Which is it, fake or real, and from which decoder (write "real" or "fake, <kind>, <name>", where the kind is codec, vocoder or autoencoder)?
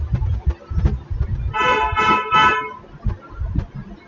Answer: real